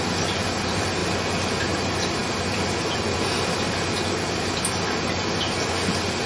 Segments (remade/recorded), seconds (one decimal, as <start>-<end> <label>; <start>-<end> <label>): 0.0-6.3 recorded